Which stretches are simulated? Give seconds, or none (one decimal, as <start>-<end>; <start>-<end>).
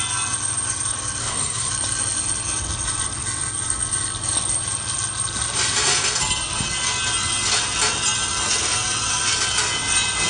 1.2-1.7